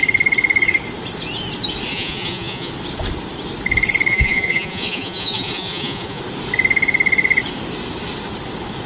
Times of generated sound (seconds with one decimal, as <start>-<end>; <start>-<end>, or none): 1.9-2.7; 4.1-6.2